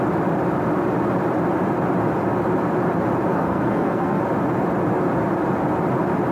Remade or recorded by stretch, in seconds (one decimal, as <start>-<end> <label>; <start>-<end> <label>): 0.0-3.3 recorded; 3.3-4.2 remade; 4.2-6.3 recorded